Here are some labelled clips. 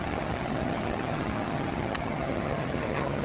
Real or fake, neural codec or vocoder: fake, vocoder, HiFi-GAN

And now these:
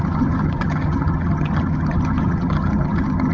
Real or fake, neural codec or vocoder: fake, vocoder, HiFi-GAN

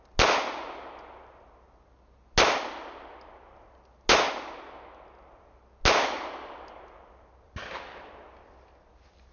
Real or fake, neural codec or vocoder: real